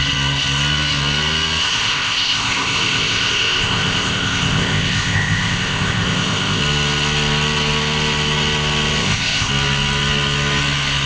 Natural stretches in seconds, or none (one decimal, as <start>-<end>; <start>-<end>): 0.0-1.6; 6.6-9.0; 9.5-11.1